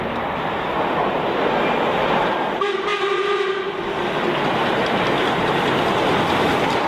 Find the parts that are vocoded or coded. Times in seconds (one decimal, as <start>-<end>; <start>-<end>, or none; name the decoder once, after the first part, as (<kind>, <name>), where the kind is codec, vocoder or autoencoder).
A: 1.9-2.5 (vocoder, BigVGAN v2); 4.6-5.5